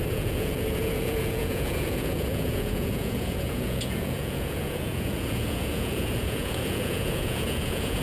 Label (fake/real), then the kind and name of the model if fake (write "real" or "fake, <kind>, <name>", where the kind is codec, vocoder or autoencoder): fake, vocoder, Vocos